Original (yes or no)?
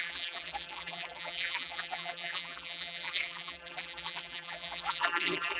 no